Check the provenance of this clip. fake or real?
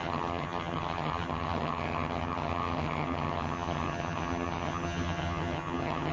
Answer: fake